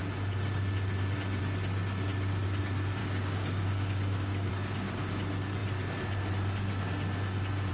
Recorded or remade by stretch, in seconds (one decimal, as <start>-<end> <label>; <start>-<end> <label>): 0.0-3.0 recorded; 3.0-4.5 remade; 4.5-7.7 recorded